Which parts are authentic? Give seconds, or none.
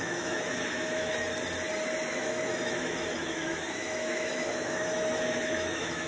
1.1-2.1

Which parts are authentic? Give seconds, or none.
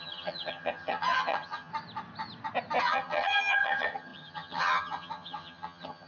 1.7-2.8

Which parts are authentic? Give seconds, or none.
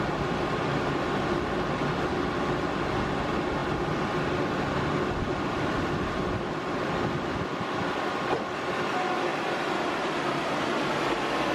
0.0-9.3; 10.6-11.5